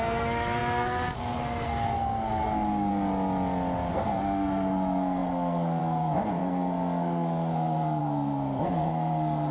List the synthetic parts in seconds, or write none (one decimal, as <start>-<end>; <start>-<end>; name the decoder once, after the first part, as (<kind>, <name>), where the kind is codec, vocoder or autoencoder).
0.0-2.9 (codec, SNAC); 3.9-9.5